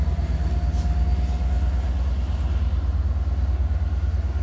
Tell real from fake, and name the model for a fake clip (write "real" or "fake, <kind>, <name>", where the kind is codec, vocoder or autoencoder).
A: real